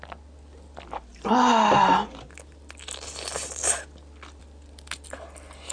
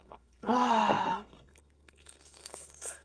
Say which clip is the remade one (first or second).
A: second